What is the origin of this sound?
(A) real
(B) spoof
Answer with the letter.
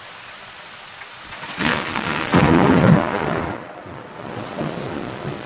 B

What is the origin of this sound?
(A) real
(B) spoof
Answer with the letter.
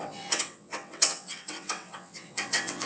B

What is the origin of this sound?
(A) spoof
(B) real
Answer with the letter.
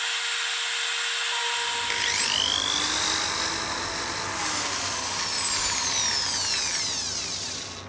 B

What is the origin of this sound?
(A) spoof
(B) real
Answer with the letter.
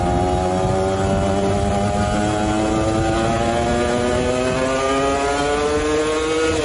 B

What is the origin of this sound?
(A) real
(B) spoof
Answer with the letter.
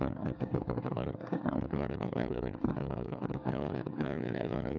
B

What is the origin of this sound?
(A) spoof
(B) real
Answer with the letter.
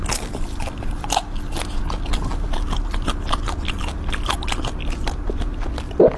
B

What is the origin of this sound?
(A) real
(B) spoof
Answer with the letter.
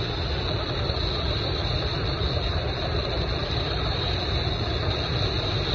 A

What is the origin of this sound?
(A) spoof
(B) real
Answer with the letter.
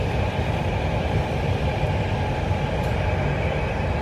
B